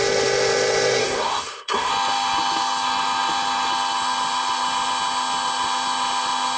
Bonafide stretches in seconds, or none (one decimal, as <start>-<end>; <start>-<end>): 0.0-1.0; 1.9-6.6